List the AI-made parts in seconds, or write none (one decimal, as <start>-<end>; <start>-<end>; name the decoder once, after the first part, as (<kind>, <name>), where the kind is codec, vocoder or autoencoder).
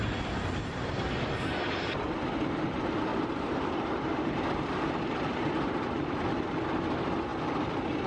3.1-5.5 (vocoder, BigVGAN v2)